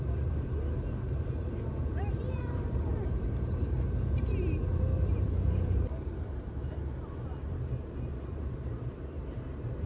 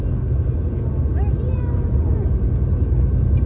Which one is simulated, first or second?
first